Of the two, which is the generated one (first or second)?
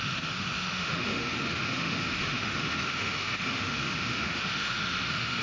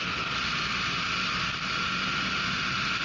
first